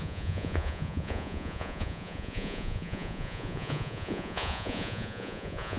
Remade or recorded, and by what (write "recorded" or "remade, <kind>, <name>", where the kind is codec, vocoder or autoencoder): remade, vocoder, Vocos